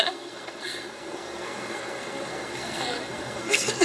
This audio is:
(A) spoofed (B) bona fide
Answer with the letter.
A